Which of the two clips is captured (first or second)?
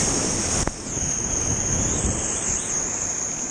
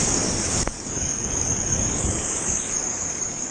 first